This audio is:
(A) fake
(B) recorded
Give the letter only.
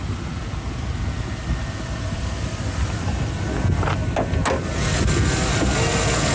B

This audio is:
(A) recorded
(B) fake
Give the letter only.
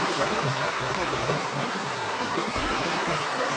B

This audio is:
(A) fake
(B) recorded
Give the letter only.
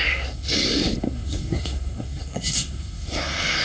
A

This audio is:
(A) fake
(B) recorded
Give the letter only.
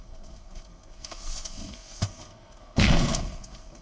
A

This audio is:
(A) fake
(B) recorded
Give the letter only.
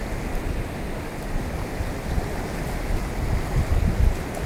B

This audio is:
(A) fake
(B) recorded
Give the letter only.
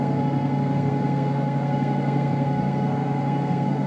A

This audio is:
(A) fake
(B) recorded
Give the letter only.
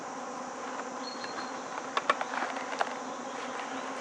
B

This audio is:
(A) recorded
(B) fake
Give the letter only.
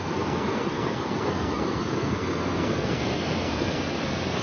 B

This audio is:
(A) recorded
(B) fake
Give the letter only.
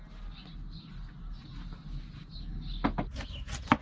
A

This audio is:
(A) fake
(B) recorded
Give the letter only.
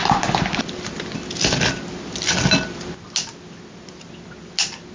B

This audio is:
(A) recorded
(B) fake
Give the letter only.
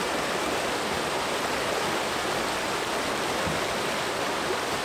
A